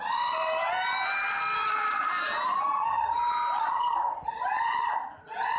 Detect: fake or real real